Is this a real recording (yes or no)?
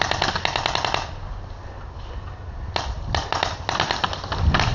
yes